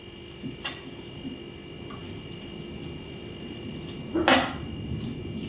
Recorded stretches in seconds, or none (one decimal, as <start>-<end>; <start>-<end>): 0.0-5.5